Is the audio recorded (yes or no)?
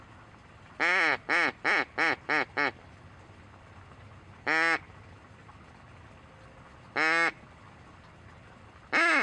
yes